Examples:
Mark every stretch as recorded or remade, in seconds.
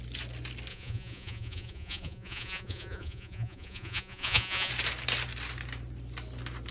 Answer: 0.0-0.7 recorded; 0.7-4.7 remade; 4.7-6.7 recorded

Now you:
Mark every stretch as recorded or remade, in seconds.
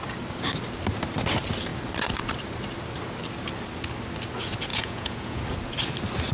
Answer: 0.0-4.7 recorded; 4.7-5.4 remade; 5.4-6.3 recorded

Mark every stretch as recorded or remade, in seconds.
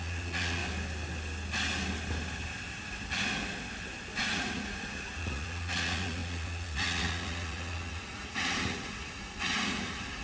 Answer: 0.0-0.6 remade; 0.6-4.1 recorded; 4.1-10.2 remade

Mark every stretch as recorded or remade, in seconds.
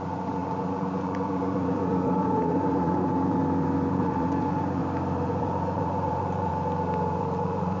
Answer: 0.0-3.4 remade; 3.4-3.9 recorded; 3.9-4.8 remade; 4.8-5.3 recorded; 5.3-6.5 remade; 6.5-7.2 recorded; 7.2-7.8 remade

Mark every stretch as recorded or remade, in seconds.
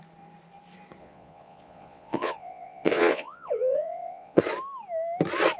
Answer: 0.0-1.0 recorded; 1.0-4.4 remade; 4.4-5.6 recorded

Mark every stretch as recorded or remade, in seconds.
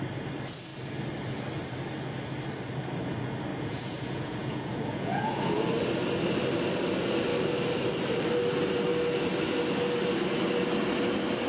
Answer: 0.0-3.5 recorded; 3.5-5.6 remade; 5.6-11.5 recorded